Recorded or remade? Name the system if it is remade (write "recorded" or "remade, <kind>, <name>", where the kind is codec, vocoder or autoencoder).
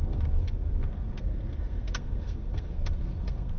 remade, codec, SNAC